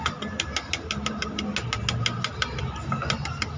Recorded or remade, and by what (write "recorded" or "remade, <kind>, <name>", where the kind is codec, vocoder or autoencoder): recorded